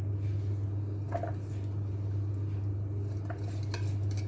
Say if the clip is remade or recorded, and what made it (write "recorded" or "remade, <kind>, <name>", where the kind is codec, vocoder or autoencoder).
recorded